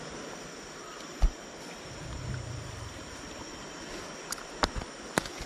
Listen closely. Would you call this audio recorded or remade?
remade